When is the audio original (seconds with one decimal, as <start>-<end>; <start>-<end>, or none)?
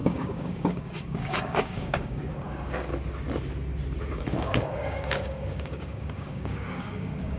2.9-4.1